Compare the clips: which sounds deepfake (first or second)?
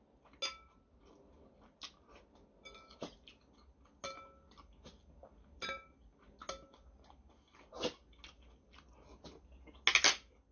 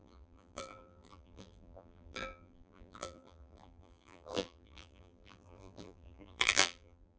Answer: second